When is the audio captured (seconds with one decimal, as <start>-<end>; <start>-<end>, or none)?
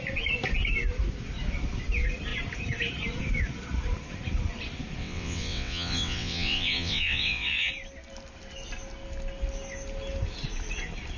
0.0-5.0; 7.7-11.2